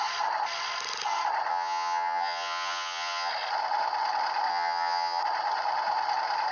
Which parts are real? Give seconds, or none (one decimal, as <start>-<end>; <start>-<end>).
0.0-1.5; 3.3-4.5; 5.2-6.5